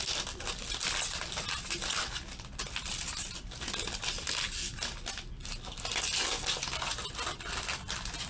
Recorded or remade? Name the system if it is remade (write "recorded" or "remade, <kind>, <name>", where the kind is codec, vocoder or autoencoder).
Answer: recorded